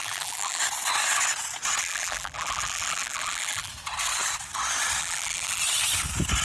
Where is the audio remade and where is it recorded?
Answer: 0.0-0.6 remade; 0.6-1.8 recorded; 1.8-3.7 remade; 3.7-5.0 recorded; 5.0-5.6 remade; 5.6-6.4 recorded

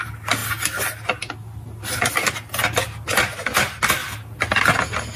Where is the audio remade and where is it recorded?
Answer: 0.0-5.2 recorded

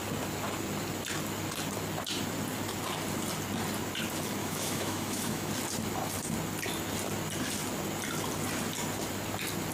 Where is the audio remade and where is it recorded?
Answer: 0.0-4.4 recorded; 4.4-5.5 remade; 5.5-9.7 recorded

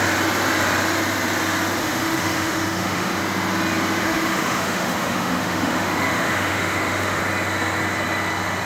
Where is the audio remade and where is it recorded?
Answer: 0.0-1.8 recorded; 1.8-3.2 remade; 3.2-4.0 recorded; 4.0-7.2 remade; 7.2-8.7 recorded

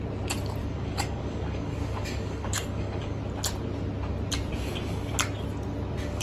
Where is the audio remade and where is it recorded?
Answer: 0.0-0.6 recorded; 0.6-3.2 remade; 3.2-6.2 recorded

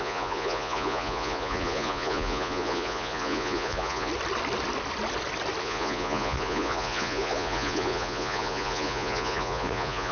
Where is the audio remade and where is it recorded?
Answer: 0.0-4.1 remade; 4.1-5.6 recorded; 5.6-10.1 remade

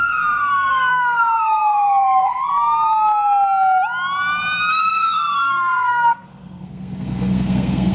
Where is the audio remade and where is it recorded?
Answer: 0.0-2.5 remade; 2.5-4.7 recorded; 4.7-7.9 remade